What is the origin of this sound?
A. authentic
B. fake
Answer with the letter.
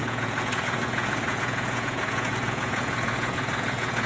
B